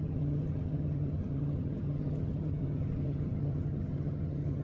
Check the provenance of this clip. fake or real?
fake